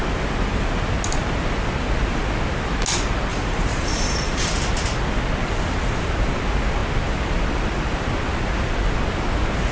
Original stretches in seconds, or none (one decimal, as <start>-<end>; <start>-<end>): 0.0-3.3; 4.5-9.7